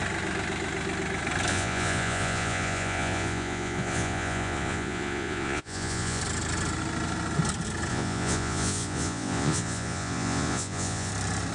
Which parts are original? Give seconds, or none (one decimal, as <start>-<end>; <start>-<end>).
0.0-1.5; 6.2-7.9; 11.1-11.5